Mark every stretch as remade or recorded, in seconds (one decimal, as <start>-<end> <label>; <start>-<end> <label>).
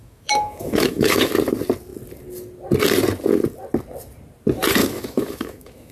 0.0-1.3 remade; 1.3-4.8 recorded; 4.8-5.9 remade